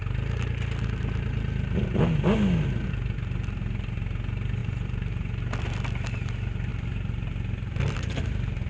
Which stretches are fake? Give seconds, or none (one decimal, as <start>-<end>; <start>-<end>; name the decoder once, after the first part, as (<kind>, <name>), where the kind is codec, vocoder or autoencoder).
4.6-5.1 (vocoder, BigVGAN v2)